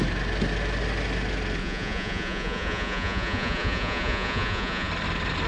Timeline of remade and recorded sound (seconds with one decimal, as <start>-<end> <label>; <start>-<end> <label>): 0.0-1.6 recorded; 1.6-4.9 remade; 4.9-5.5 recorded